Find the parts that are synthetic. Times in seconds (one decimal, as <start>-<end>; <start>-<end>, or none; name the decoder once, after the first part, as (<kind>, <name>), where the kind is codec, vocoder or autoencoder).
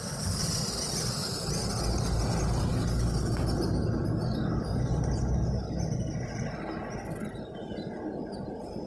none